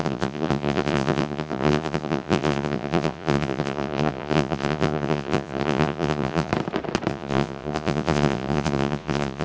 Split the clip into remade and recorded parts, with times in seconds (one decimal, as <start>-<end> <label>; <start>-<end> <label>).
0.0-6.5 remade; 6.5-7.1 recorded; 7.1-9.4 remade